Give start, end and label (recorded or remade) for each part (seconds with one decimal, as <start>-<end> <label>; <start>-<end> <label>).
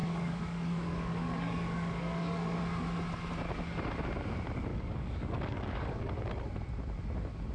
0.0-2.6 remade; 2.6-4.7 recorded; 4.7-6.1 remade; 6.1-7.5 recorded